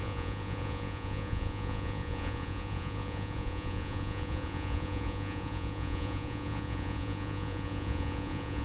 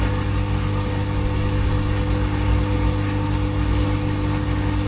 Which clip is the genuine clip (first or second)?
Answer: second